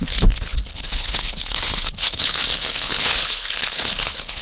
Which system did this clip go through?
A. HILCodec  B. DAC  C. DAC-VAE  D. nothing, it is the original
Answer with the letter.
A